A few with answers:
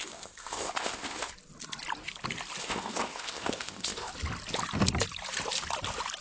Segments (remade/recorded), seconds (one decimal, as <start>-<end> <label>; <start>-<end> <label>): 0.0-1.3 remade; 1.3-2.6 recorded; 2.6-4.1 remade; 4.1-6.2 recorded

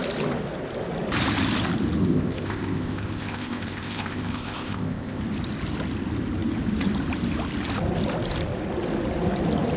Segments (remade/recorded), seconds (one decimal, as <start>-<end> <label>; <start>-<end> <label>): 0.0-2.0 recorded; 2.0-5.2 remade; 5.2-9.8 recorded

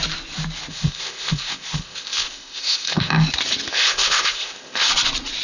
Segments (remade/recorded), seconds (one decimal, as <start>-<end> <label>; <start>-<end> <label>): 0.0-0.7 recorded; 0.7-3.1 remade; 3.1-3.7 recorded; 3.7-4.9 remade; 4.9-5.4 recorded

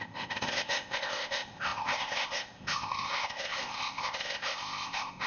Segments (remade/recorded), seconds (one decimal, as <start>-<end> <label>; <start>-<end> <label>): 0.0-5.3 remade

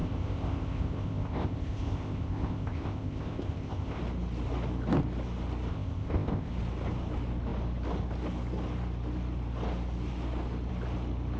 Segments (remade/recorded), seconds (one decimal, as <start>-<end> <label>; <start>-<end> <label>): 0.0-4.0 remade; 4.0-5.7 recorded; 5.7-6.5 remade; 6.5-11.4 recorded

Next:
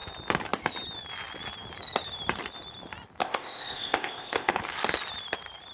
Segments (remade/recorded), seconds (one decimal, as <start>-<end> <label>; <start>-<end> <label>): 0.0-3.2 recorded; 3.2-4.6 remade; 4.6-5.7 recorded